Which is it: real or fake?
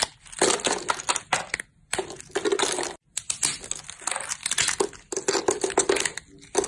real